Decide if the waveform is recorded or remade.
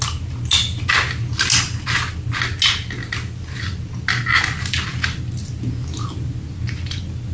recorded